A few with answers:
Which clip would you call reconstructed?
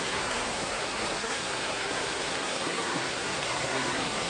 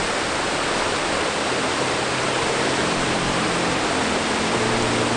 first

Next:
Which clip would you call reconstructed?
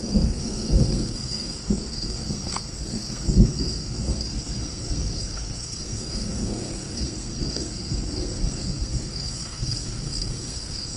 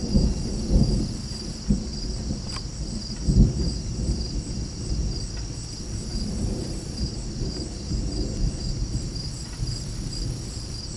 first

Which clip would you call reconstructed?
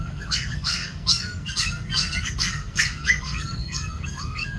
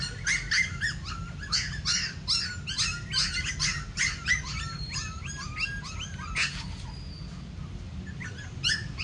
first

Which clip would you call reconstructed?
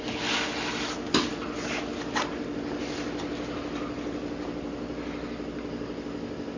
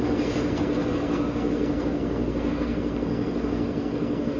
second